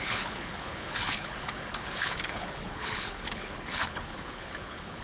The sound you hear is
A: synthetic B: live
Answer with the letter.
A